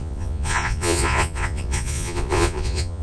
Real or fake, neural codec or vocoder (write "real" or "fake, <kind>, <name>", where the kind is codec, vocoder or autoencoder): fake, vocoder, Vocos